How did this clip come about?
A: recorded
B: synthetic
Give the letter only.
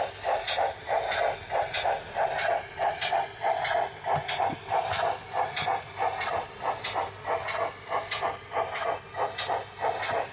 A